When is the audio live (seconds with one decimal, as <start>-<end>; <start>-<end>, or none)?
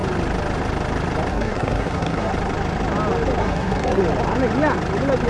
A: 0.0-1.3; 2.3-3.4; 4.0-5.3